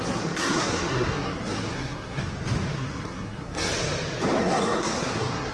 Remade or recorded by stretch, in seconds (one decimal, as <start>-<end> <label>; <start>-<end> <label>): 0.0-2.2 remade; 2.2-2.7 recorded; 2.7-3.7 remade; 3.7-4.4 recorded; 4.4-5.5 remade